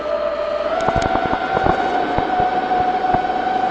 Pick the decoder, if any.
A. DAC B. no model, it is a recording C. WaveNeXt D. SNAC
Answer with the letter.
B